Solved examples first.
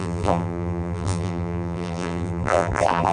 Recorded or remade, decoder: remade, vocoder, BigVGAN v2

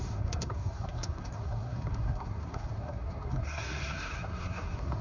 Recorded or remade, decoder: remade, codec, SNAC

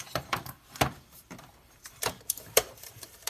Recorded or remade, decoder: remade, vocoder, BigVGAN v2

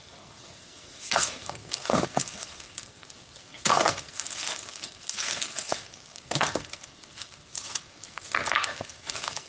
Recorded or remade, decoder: remade, codec, SNAC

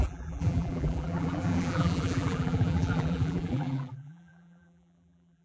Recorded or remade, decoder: remade, vocoder, BigVGAN v2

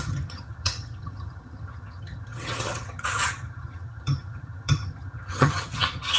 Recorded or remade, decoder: remade, vocoder, HiFi-GAN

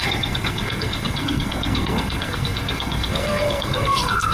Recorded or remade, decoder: remade, codec, SNAC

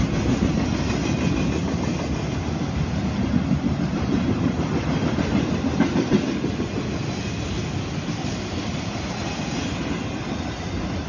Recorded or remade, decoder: recorded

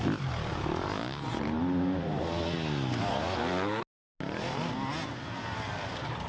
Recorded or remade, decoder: recorded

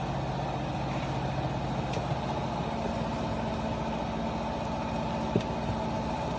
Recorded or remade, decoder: recorded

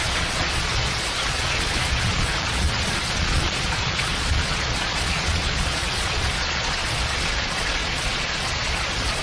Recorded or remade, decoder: remade, vocoder, Vocos